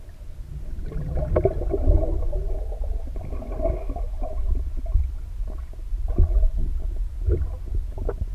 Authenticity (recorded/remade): recorded